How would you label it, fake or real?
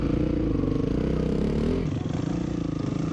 real